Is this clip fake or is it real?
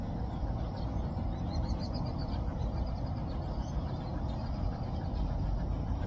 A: real